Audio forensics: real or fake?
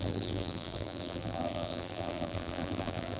fake